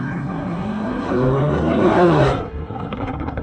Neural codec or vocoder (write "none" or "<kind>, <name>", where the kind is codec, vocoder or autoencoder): codec, SNAC